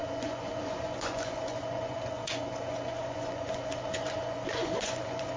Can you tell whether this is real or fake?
fake